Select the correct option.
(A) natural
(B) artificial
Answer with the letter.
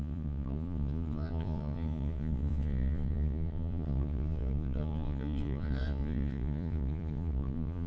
B